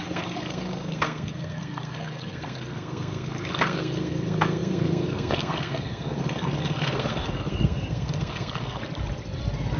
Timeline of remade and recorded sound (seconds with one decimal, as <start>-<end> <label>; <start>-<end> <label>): 0.0-8.8 remade; 8.8-9.8 recorded